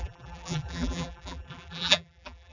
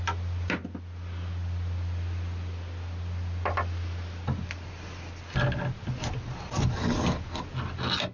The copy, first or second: first